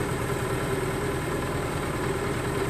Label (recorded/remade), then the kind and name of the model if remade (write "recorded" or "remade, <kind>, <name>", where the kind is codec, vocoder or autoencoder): remade, vocoder, BigVGAN v2